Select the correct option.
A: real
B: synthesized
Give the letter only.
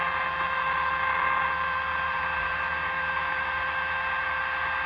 A